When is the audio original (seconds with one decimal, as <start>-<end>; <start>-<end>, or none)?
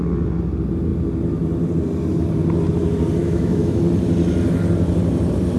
0.0-3.2; 3.8-5.6